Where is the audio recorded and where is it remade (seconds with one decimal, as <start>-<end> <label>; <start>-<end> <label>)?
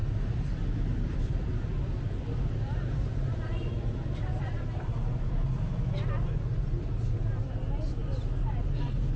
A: 0.0-9.2 recorded